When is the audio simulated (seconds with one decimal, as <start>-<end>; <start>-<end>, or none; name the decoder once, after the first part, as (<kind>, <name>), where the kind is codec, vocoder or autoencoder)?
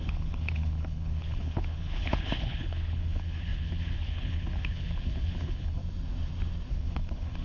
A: 0.0-5.8 (codec, HILCodec); 6.7-7.4